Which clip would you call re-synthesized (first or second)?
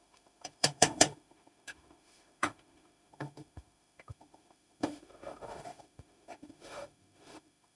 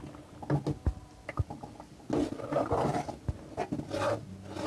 first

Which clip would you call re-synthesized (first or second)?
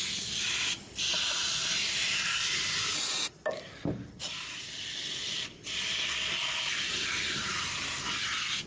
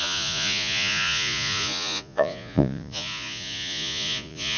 second